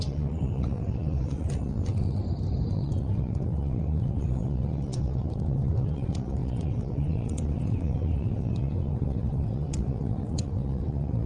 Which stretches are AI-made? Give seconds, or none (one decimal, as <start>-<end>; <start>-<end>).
0.0-2.2; 2.7-11.3